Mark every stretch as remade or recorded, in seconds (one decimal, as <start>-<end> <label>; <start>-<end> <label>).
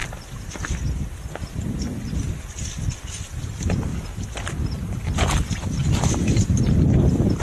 0.0-3.9 recorded; 3.9-5.0 remade; 5.0-7.4 recorded